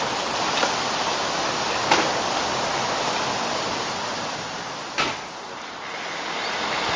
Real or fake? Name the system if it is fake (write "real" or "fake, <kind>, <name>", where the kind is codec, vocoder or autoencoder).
real